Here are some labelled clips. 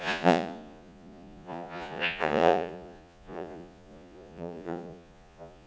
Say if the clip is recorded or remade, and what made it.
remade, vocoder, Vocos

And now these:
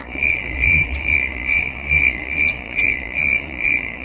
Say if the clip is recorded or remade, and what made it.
remade, vocoder, Vocos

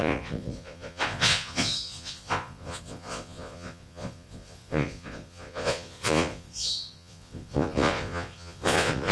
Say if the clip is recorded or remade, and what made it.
remade, vocoder, Vocos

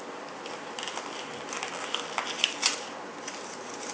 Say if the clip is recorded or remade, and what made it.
recorded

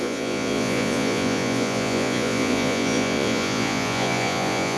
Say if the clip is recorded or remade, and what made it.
remade, vocoder, Vocos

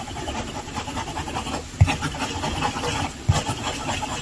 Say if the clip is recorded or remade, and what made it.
recorded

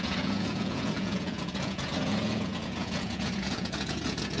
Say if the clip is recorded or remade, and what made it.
remade, vocoder, Vocos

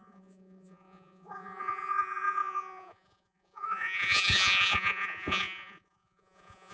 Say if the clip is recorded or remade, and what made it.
remade, vocoder, Vocos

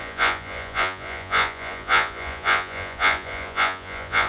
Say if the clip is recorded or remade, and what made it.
remade, vocoder, Vocos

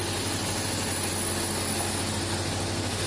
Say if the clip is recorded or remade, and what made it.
recorded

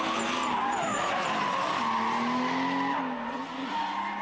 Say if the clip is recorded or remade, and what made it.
recorded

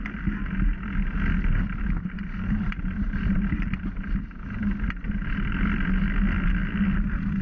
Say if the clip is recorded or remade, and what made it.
recorded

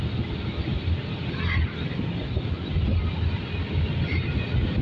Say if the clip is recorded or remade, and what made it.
recorded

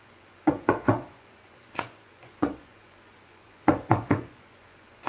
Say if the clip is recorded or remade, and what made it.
remade, vocoder, Vocos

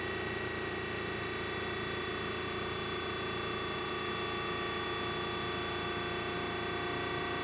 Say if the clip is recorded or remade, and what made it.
recorded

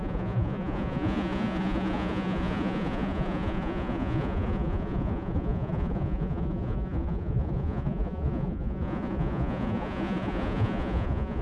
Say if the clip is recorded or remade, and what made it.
remade, vocoder, Vocos